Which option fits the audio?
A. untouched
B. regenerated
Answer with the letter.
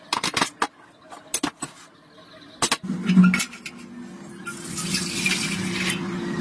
A